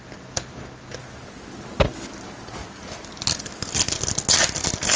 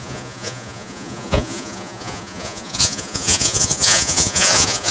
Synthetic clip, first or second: second